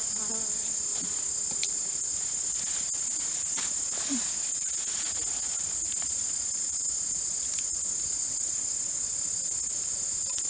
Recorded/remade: recorded